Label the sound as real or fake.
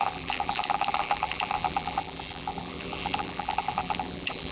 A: fake